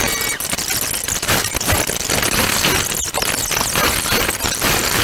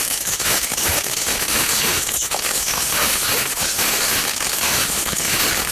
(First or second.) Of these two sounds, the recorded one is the first